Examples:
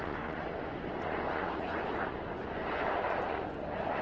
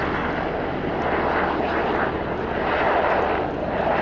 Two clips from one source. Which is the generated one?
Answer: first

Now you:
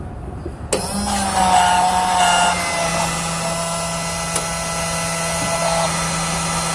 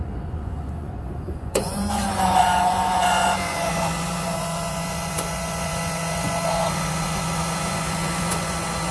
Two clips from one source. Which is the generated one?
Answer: second